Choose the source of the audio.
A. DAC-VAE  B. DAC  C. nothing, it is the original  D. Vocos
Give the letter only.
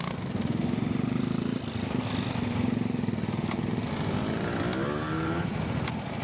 C